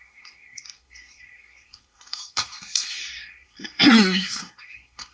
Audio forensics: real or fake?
fake